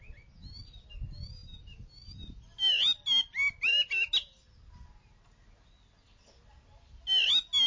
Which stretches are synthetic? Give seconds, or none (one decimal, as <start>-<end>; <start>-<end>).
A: none